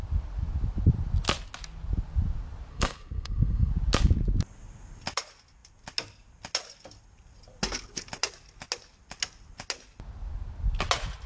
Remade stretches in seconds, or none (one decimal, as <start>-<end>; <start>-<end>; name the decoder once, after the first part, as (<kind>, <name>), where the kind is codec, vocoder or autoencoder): 2.7-3.7 (codec, SNAC)